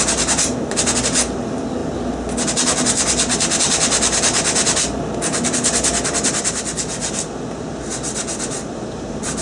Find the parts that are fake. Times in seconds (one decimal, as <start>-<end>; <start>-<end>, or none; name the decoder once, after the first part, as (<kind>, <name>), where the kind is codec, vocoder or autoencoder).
none